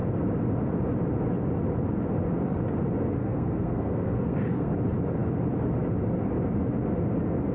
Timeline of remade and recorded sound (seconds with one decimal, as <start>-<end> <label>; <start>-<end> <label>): 0.0-3.2 recorded; 3.2-4.7 remade; 4.7-7.5 recorded